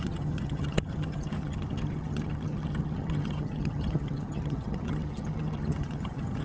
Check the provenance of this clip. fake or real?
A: fake